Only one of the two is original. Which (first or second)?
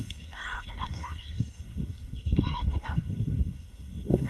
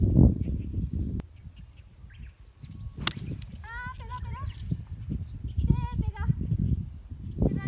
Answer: second